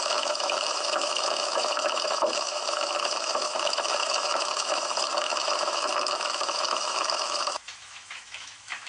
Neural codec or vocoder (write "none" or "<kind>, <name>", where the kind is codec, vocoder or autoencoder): autoencoder, DAC-VAE